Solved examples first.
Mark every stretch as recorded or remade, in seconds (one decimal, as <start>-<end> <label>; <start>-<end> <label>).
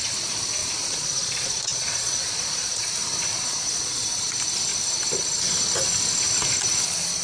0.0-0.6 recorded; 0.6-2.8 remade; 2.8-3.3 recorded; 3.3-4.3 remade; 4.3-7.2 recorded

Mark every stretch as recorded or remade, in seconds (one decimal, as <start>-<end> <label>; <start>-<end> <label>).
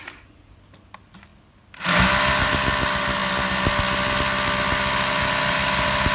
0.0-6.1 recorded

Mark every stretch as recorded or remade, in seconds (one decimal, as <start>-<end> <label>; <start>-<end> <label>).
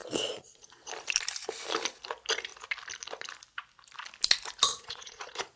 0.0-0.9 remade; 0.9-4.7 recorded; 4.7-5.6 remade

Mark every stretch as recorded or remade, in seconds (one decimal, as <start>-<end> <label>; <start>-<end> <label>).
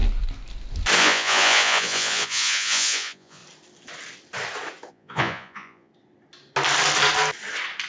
0.0-1.0 recorded; 1.0-3.4 remade; 3.4-4.9 recorded; 4.9-5.9 remade; 5.9-7.9 recorded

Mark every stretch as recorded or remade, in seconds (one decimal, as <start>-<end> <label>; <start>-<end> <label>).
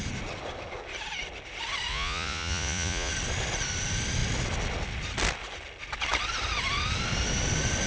0.0-1.9 recorded; 1.9-3.1 remade; 3.1-7.9 recorded